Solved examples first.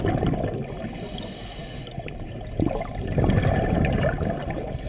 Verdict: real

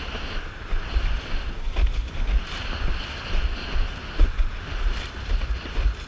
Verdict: real